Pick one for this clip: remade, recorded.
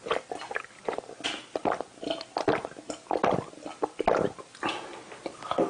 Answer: recorded